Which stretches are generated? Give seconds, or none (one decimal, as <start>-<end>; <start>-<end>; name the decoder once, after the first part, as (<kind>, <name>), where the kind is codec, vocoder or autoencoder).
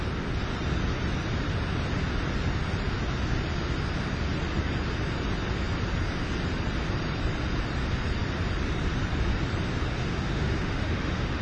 10.0-11.4 (autoencoder, DAC-VAE)